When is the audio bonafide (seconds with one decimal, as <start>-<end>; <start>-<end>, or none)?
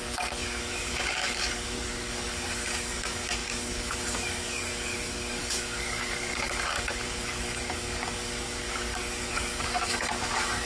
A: none